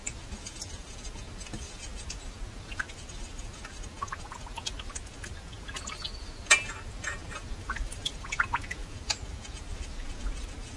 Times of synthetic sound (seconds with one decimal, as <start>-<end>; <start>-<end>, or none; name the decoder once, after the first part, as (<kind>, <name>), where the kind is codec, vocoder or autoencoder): none